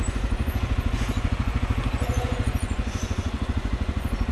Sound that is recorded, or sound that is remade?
remade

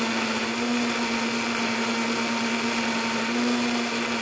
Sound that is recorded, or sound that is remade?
recorded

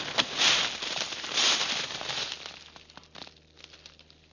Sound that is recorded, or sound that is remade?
recorded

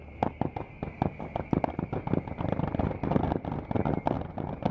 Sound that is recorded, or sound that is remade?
recorded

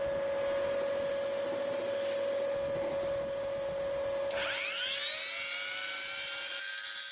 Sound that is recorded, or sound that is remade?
recorded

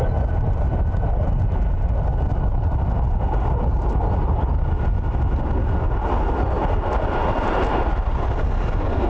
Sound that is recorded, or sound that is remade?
recorded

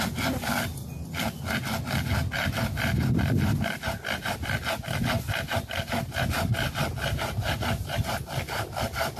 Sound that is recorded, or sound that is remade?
recorded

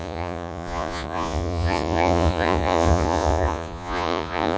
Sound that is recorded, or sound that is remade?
remade